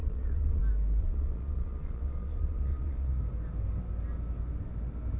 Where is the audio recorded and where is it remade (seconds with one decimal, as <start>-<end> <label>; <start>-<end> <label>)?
0.0-0.6 remade; 0.6-1.0 recorded; 1.0-3.2 remade; 3.2-5.2 recorded